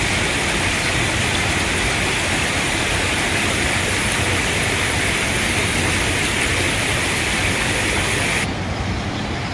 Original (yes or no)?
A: yes